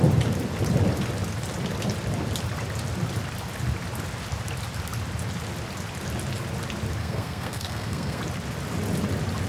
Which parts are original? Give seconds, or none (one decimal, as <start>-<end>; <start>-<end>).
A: 0.0-7.0; 8.2-9.5